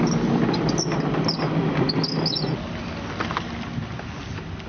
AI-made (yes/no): no